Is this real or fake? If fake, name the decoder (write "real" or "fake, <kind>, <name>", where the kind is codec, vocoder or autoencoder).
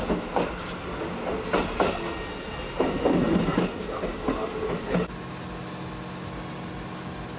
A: real